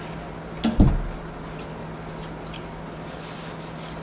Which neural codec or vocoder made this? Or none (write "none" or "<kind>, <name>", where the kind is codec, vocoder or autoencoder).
none